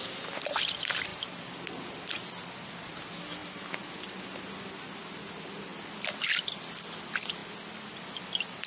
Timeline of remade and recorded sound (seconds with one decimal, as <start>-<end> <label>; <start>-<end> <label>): 0.0-8.7 recorded